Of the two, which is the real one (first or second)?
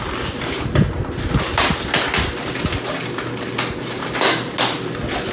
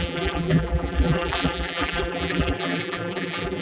first